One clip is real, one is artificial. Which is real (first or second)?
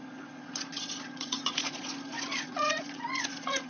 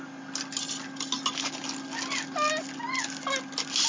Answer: second